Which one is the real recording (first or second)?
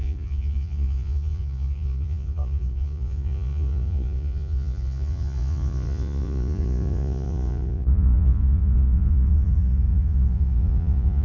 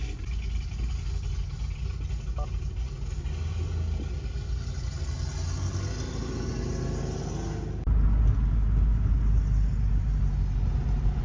second